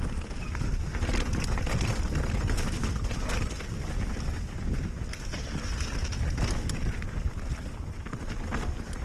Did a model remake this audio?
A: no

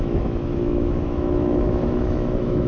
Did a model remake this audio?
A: yes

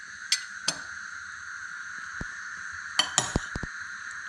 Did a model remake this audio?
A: no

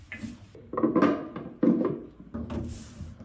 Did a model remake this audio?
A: no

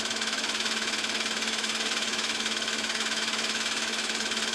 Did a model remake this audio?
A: yes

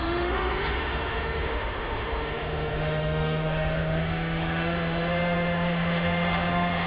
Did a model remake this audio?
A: yes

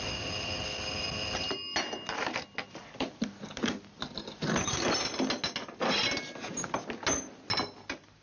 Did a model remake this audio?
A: no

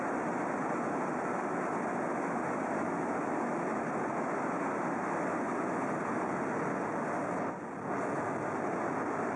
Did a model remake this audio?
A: no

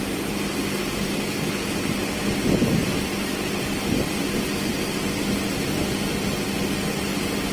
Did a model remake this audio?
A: no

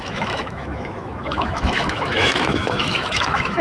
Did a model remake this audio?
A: yes